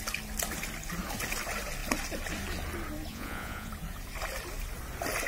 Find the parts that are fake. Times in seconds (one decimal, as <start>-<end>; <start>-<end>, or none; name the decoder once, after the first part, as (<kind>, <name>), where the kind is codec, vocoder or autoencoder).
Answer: 3.1-3.7 (vocoder, Vocos)